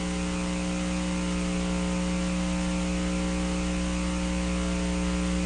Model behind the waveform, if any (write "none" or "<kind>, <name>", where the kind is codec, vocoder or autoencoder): none